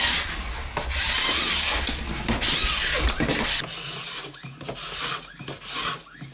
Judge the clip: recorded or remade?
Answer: recorded